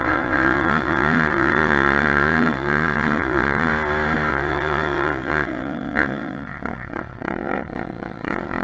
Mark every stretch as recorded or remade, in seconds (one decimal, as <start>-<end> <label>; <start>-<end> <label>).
0.0-3.7 remade; 3.7-4.3 recorded; 4.3-8.6 remade